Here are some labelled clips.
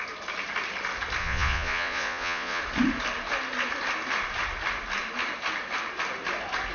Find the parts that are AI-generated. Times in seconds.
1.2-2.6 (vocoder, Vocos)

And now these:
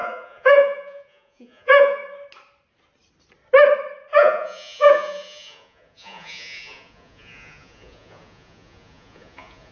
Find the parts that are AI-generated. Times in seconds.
0.0-2.0 (vocoder, Vocos); 4.1-9.7